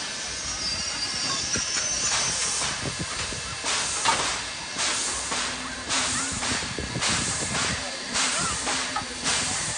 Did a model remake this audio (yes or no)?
yes